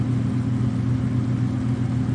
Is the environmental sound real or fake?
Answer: real